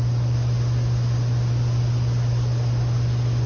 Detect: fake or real real